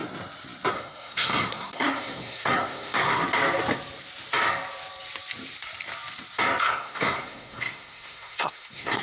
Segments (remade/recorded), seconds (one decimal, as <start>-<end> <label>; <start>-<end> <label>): 0.0-0.7 recorded; 0.7-3.2 remade; 3.2-6.6 recorded; 6.6-9.0 remade